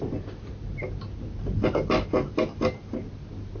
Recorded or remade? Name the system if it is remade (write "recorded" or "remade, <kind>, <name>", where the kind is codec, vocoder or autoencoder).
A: recorded